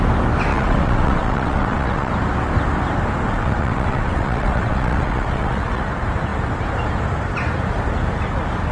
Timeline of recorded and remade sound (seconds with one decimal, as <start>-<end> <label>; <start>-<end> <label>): 0.0-0.5 recorded; 0.5-2.1 remade; 2.1-3.4 recorded; 3.4-5.8 remade; 5.8-8.7 recorded